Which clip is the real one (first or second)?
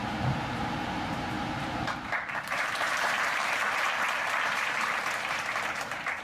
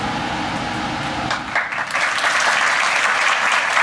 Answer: second